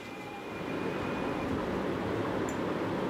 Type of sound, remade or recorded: recorded